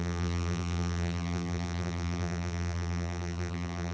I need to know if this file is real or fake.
fake